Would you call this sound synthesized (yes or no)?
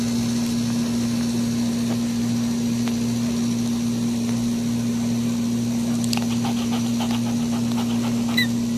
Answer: yes